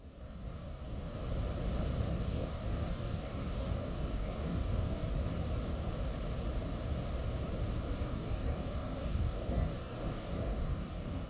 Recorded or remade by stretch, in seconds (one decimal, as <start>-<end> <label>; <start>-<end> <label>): 0.0-1.2 remade; 1.2-2.1 recorded; 2.1-5.1 remade; 5.1-7.9 recorded; 7.9-11.3 remade